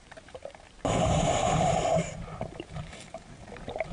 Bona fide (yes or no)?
no